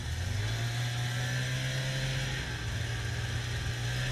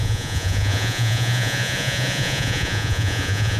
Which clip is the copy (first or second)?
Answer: second